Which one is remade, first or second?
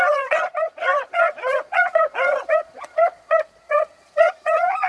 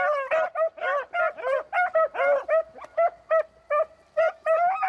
first